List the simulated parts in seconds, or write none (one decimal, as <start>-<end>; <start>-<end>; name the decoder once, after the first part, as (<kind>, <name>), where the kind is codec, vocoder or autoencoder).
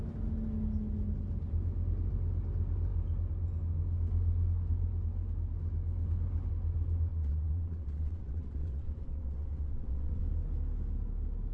7.1-10.2 (vocoder, WaveNeXt)